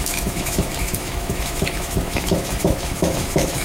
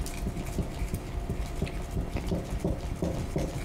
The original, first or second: second